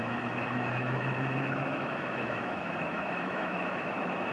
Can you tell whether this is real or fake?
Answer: fake